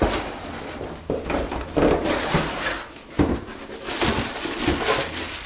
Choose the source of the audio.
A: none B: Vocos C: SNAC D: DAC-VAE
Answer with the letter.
A